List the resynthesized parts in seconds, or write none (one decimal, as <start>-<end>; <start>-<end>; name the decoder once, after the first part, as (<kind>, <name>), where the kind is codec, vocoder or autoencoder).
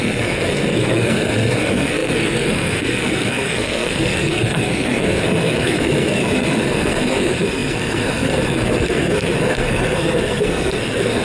0.0-11.2 (codec, SNAC)